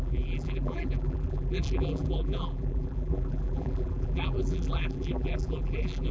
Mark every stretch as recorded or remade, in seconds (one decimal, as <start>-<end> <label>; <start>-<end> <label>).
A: 0.0-6.1 remade